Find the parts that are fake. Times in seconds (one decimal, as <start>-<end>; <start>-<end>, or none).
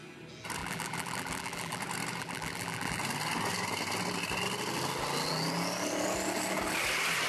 0.6-1.8; 2.2-3.0